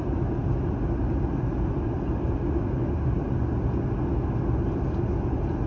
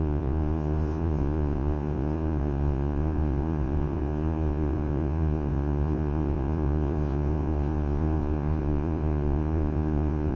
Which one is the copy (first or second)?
second